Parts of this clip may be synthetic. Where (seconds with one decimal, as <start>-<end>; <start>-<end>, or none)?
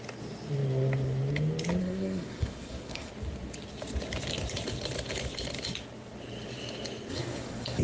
1.8-3.1; 7.1-7.8